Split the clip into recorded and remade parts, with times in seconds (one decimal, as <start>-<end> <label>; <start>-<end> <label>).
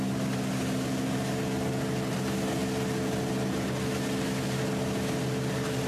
0.0-5.9 recorded